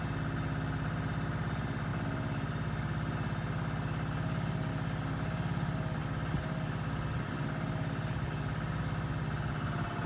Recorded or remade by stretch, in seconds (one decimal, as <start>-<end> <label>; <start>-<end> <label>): 0.0-10.1 recorded